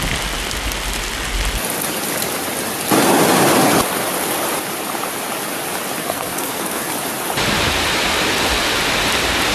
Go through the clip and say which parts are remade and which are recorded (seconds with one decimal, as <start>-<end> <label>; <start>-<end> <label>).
0.0-6.0 recorded; 6.0-6.9 remade; 6.9-9.5 recorded